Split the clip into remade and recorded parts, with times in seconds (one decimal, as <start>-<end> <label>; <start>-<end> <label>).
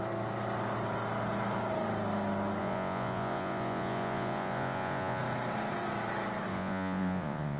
0.0-2.6 recorded; 2.6-5.2 remade; 5.2-6.5 recorded; 6.5-7.6 remade